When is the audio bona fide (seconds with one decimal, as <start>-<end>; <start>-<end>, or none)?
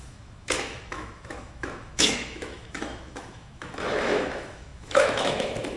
none